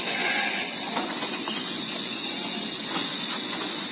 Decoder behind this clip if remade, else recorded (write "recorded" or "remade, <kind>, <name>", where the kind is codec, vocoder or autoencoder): remade, vocoder, Vocos